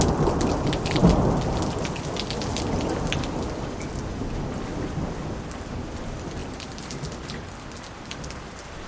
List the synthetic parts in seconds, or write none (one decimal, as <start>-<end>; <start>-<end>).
6.4-7.8

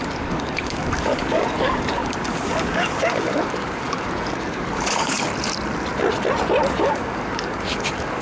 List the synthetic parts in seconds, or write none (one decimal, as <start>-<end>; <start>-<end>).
0.0-5.3; 6.7-8.2